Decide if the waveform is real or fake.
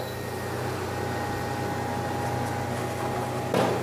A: fake